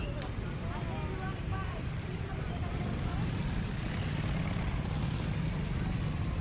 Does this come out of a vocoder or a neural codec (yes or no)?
no